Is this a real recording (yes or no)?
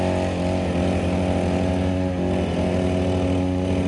yes